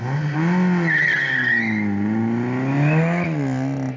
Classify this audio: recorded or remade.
recorded